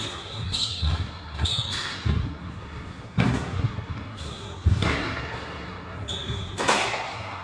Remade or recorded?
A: remade